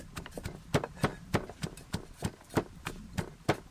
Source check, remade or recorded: recorded